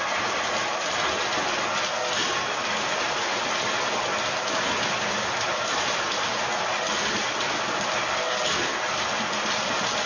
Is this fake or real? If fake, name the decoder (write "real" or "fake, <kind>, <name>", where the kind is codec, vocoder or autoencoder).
real